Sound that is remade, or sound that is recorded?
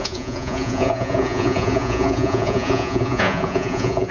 remade